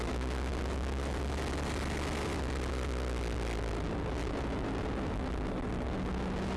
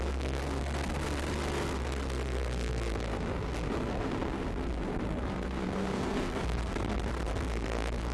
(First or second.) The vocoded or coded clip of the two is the second